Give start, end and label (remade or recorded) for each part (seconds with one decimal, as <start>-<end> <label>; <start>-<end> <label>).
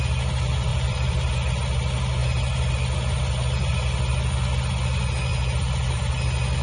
0.0-0.7 recorded; 0.7-1.3 remade; 1.3-5.3 recorded; 5.3-6.0 remade; 6.0-6.6 recorded